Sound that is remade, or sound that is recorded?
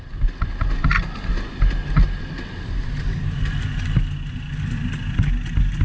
recorded